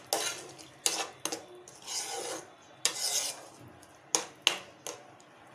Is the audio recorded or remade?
recorded